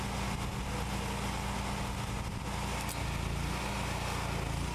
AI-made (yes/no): no